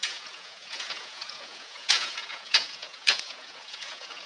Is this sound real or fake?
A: fake